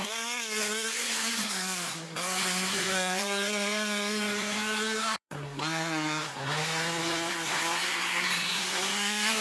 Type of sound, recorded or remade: remade